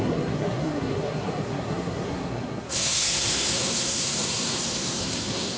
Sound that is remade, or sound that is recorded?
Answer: remade